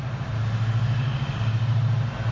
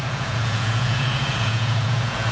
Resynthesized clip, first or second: second